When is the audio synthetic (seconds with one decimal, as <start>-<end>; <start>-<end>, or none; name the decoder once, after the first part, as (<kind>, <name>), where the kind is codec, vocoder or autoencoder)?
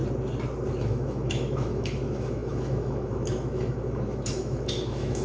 0.8-5.2 (autoencoder, DAC-VAE)